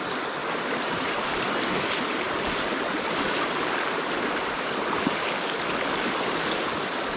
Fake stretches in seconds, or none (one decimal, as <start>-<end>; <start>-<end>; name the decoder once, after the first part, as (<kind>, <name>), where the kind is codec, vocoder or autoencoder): 0.4-1.3 (vocoder, BigVGAN v2)